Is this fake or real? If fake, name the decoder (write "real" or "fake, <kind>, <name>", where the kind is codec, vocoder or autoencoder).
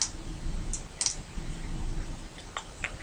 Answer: real